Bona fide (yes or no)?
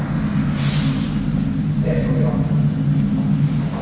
yes